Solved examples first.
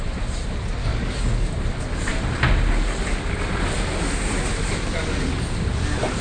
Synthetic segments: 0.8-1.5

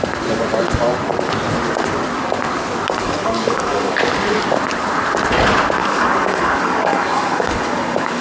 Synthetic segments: 3.0-4.0; 5.8-8.2

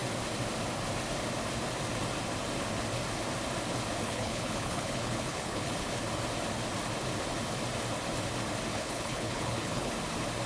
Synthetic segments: 4.0-5.9; 8.7-9.9

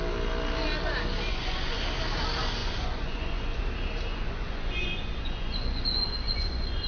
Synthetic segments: 1.3-1.8; 2.6-3.6; 4.1-6.9

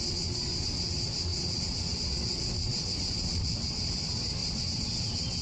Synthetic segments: 0.0-5.4

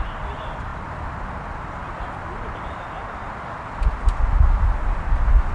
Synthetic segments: 0.7-2.9